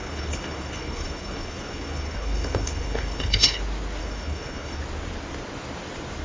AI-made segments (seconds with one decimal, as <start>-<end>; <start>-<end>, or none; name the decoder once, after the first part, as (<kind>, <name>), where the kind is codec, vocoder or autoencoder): 0.0-3.6 (codec, HILCodec); 4.0-4.8